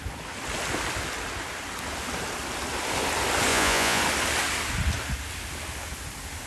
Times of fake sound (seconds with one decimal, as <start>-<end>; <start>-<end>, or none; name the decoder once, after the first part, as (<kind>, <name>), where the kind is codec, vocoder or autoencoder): 3.5-4.0 (vocoder, Vocos)